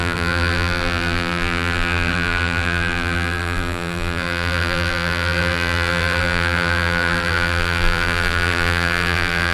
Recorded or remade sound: remade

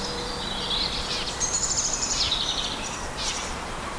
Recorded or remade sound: remade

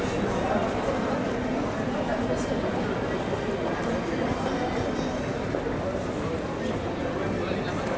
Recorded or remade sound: recorded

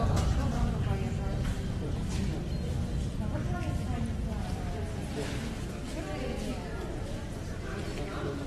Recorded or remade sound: recorded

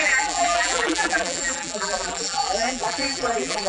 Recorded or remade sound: remade